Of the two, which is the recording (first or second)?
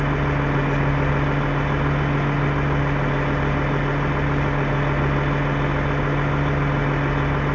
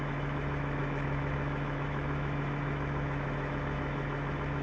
first